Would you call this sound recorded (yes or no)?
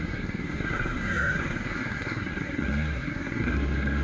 no